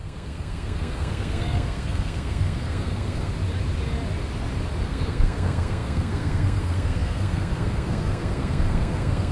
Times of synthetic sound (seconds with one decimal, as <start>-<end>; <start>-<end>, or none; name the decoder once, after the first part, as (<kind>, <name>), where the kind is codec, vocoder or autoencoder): 0.0-3.3 (codec, SNAC); 4.8-9.3

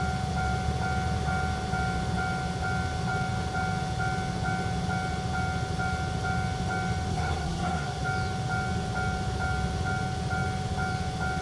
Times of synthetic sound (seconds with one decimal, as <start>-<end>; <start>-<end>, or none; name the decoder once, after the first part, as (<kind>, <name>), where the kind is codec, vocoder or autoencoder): 7.1-8.0 (codec, SNAC)